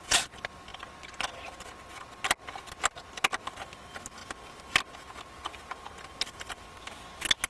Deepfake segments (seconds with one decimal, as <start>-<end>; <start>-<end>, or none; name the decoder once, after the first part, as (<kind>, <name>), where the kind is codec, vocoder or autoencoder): none